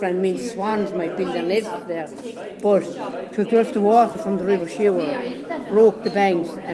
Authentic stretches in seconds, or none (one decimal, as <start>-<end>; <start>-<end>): 0.7-4.6